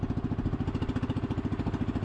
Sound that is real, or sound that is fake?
real